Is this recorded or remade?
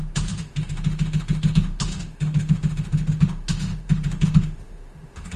remade